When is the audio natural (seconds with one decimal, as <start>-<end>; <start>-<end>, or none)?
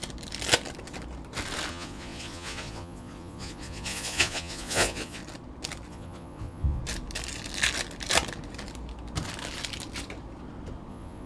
0.0-1.7; 5.2-5.9; 6.8-10.9